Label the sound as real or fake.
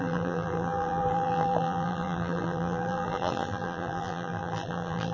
fake